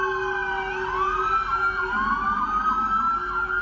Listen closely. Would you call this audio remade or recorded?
recorded